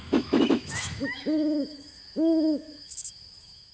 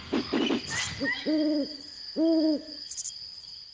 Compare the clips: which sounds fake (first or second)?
first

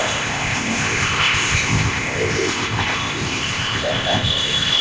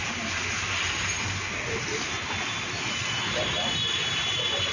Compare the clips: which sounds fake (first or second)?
first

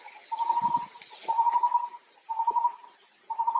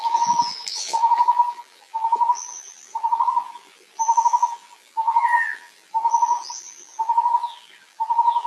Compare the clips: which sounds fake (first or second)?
second